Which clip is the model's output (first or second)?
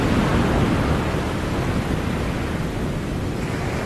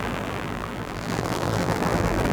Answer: second